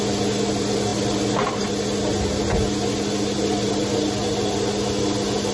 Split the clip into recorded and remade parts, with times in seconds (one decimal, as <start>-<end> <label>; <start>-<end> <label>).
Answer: 0.0-5.5 recorded